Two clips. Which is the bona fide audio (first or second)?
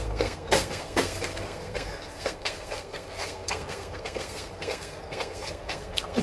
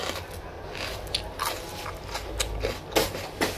second